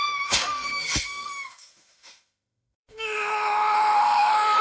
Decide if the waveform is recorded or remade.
remade